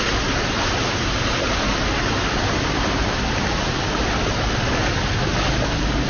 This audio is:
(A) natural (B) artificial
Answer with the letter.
A